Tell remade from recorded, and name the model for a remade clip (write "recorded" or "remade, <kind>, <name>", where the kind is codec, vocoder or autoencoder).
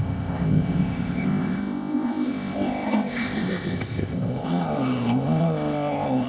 remade, codec, ZipCodec